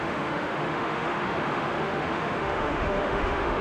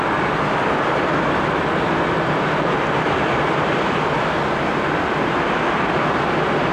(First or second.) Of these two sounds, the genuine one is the second